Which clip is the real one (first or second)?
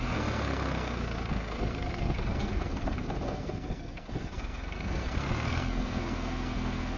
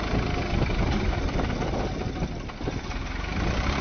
second